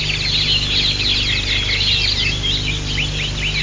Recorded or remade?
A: recorded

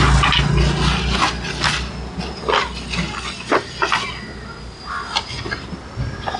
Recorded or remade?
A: recorded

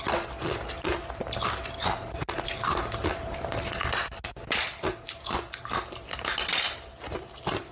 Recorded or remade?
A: recorded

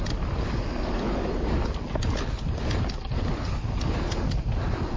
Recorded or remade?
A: recorded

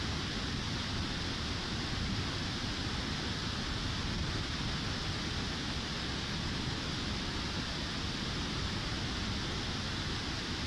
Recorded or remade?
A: recorded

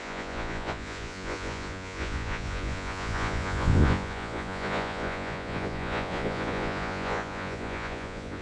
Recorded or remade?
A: remade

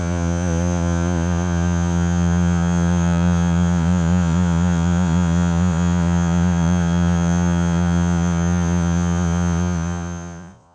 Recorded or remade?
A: remade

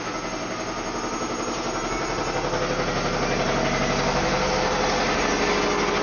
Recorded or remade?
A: recorded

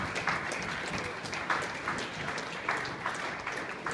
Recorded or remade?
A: recorded